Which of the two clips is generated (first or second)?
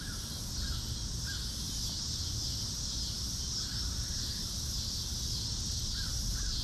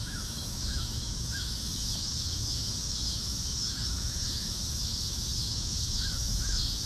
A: second